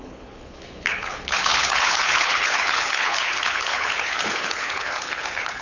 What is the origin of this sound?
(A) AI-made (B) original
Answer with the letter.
A